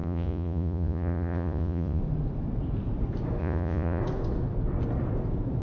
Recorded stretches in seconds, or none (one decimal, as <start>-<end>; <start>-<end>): 2.0-3.4; 4.0-5.6